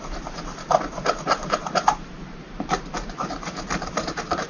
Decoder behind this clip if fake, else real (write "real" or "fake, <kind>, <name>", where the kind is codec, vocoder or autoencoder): fake, vocoder, BigVGAN v2